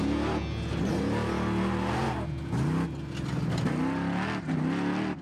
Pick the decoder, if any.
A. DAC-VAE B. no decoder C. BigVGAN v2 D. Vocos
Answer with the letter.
B